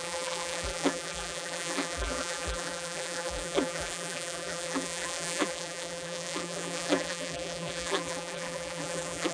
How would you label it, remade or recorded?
remade